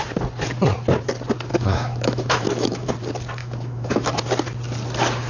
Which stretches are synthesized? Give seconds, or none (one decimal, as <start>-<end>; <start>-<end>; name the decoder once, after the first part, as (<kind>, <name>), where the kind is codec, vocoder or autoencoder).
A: 1.5-2.9 (autoencoder, DAC-VAE); 3.4-4.1

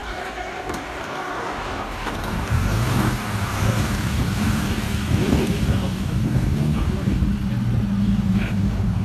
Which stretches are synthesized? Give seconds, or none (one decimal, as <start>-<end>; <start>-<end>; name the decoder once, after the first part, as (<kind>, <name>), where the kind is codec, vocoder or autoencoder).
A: 0.0-7.2 (codec, DAC); 8.0-9.0

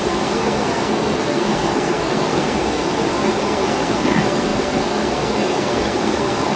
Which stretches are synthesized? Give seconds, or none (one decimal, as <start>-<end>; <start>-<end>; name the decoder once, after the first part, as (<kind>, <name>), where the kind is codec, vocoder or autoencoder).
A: 0.0-6.6 (codec, SNAC)

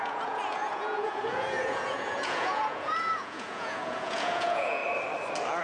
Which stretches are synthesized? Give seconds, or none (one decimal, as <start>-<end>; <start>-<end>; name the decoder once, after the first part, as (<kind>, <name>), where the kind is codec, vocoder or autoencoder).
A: 0.0-4.8 (vocoder, Vocos)

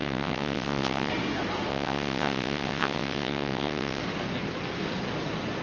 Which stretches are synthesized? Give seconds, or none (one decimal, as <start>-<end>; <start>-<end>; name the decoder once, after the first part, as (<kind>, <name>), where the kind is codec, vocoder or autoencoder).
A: 0.0-1.1 (vocoder, WaveNeXt); 1.7-4.0